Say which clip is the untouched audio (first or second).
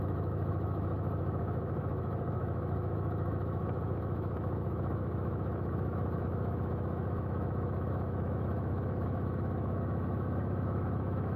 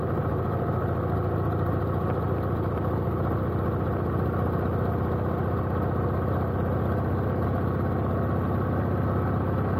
second